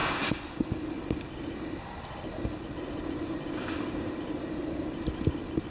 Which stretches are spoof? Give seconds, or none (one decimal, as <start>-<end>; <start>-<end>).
none